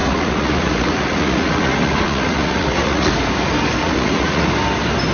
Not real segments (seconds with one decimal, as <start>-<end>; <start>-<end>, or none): 0.0-3.1; 3.8-4.5